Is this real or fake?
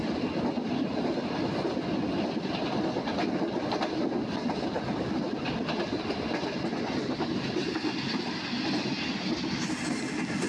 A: real